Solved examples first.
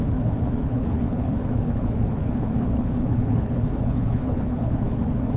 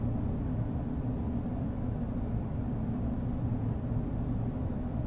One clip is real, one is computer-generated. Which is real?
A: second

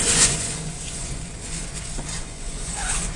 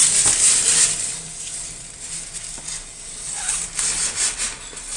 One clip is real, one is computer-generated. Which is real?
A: second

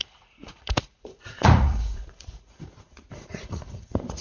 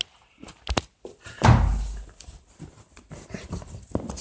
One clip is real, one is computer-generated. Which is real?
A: second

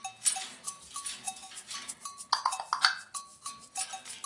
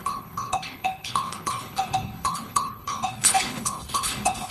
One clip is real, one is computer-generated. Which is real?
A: first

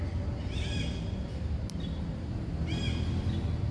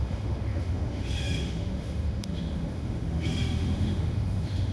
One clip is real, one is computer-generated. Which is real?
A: first